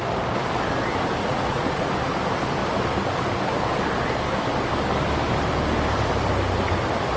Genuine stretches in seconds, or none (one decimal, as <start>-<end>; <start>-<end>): 0.0-1.2; 1.9-7.2